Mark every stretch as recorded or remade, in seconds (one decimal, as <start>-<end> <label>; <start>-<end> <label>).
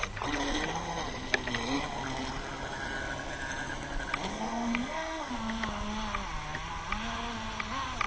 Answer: 0.0-4.3 recorded; 4.3-5.3 remade; 5.3-8.1 recorded